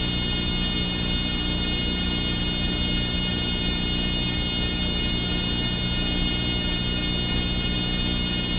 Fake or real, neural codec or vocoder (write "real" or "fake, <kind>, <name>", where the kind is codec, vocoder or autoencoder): real